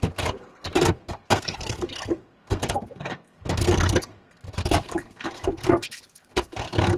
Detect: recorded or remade remade